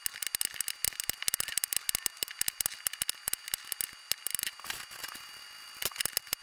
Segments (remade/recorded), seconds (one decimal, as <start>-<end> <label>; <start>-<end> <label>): 0.0-6.4 recorded